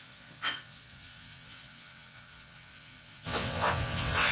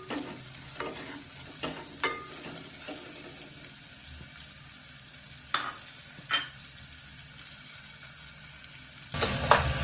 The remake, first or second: first